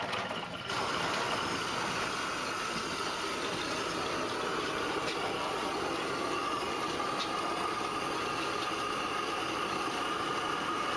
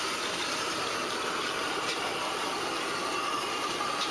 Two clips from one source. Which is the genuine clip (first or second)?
first